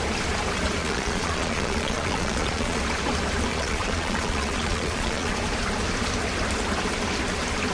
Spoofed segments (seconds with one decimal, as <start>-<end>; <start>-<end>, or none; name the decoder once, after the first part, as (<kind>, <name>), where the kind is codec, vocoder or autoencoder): 0.8-2.8 (vocoder, Vocos); 3.5-5.3